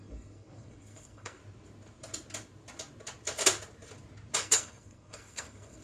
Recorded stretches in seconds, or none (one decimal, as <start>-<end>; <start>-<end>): 1.4-4.4